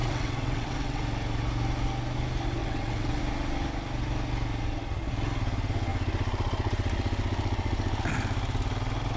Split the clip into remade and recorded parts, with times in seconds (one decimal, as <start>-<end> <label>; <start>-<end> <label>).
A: 0.0-1.0 remade; 1.0-2.6 recorded; 2.6-3.2 remade; 3.2-9.2 recorded